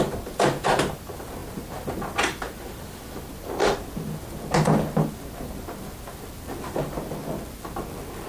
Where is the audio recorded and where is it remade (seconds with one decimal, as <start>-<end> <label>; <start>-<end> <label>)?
0.0-8.3 recorded